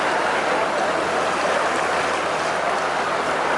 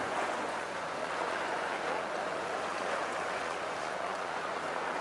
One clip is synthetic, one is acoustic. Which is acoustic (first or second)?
first